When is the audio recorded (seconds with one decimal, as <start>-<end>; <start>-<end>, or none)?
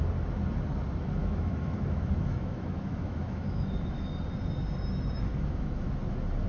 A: 0.0-1.2; 4.1-5.3; 5.9-6.5